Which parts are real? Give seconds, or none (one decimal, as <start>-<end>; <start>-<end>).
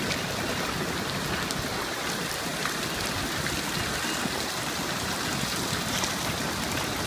0.0-7.1